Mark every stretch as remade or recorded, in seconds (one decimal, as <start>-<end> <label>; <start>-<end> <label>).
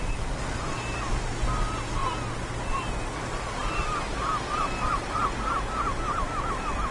0.0-6.9 recorded